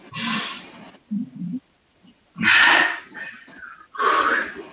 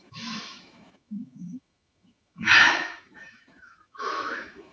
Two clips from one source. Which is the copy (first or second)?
second